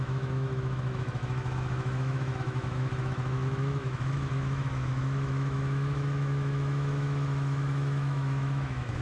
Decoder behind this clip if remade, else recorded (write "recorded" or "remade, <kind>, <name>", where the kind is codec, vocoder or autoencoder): remade, autoencoder, DAC-VAE